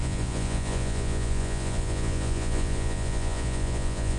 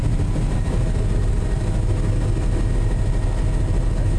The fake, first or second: first